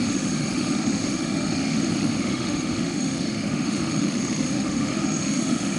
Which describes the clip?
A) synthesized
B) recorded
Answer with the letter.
A